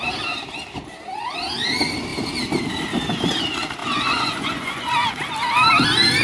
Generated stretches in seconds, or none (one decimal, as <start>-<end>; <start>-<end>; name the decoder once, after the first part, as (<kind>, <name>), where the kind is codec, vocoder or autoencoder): 3.8-4.9 (vocoder, Vocos)